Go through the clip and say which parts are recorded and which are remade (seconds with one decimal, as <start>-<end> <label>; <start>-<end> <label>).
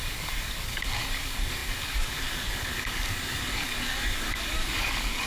0.0-5.3 remade